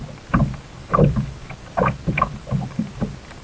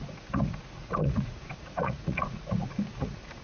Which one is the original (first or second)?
first